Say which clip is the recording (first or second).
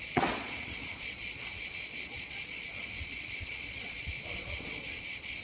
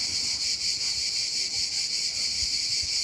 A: second